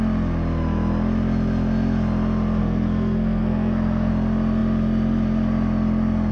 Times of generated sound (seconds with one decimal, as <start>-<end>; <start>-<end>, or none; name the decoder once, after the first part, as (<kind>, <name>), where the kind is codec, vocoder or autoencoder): 2.6-4.1 (codec, SNAC)